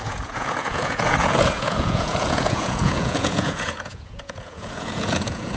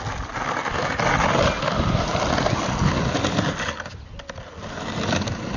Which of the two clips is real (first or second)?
second